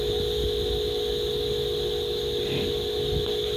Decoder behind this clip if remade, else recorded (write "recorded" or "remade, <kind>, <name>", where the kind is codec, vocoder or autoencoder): recorded